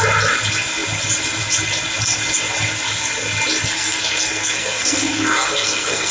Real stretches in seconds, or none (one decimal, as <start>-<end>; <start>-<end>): 0.0-3.7